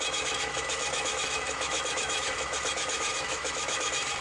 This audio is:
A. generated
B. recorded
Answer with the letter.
A